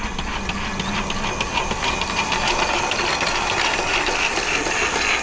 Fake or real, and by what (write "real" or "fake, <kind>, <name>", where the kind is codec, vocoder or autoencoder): real